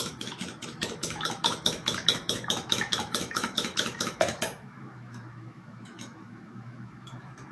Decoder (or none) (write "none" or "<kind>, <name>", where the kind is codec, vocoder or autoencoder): autoencoder, DAC-VAE